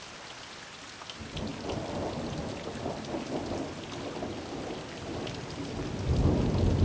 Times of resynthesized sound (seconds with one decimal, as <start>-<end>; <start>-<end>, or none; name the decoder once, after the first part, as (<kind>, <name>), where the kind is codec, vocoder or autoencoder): none